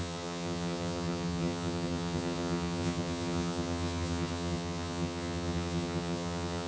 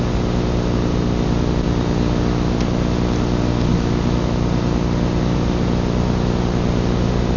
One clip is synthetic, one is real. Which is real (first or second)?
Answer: second